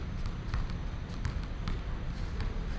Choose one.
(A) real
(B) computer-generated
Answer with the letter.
A